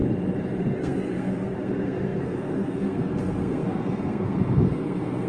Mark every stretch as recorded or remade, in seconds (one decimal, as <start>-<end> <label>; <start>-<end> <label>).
0.0-0.6 recorded; 0.6-5.3 remade